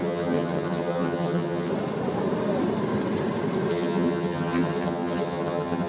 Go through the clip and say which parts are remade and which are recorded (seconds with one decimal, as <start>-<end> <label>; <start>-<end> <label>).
0.0-1.7 remade; 1.7-3.7 recorded; 3.7-5.9 remade